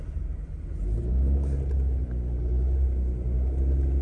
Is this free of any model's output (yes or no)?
yes